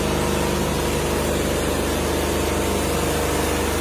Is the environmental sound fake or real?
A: real